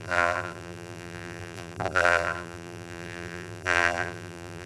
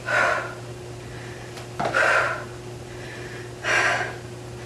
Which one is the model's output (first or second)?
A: first